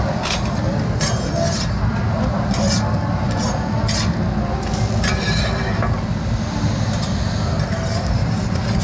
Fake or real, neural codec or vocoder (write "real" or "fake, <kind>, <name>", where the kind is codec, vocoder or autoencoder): real